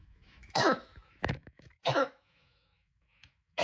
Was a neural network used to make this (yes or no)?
yes